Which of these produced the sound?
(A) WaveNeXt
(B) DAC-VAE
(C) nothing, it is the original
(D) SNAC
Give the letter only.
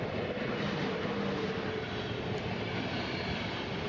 C